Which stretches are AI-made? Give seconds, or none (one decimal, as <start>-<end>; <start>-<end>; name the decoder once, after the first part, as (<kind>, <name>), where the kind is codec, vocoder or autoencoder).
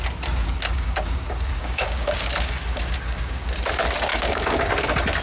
0.4-3.5 (codec, DAC); 4.1-4.7